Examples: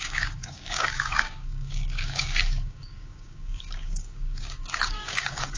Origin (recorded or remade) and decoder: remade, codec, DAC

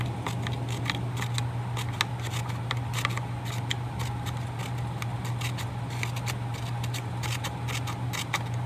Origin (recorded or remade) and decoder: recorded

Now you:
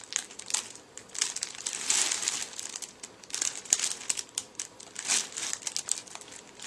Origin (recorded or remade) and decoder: recorded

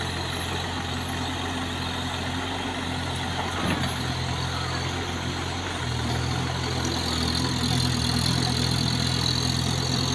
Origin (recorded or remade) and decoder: recorded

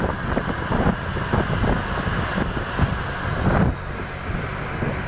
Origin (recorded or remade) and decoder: recorded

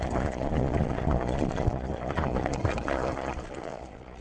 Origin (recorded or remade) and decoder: remade, vocoder, Vocos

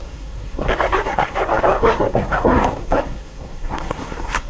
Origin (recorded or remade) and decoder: remade, codec, SNAC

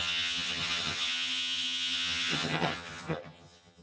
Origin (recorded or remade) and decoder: remade, vocoder, HiFi-GAN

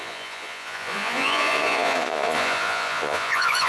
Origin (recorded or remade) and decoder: remade, vocoder, Vocos